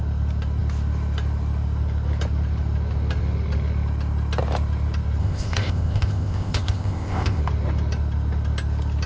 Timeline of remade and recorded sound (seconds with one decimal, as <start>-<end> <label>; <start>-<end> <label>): 0.0-5.2 recorded; 5.2-7.4 remade; 7.4-9.1 recorded